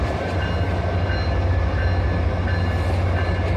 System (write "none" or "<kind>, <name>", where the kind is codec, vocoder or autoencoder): none